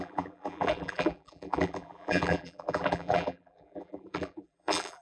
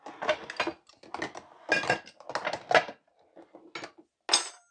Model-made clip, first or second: first